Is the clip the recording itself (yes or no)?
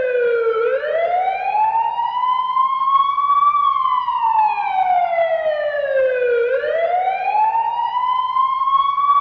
yes